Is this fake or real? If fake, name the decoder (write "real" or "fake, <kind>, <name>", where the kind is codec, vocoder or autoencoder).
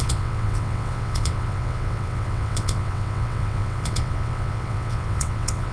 fake, vocoder, WaveNeXt